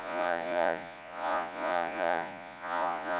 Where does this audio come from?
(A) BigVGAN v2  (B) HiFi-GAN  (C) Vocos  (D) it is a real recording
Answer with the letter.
C